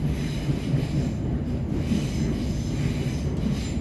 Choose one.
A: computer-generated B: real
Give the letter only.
B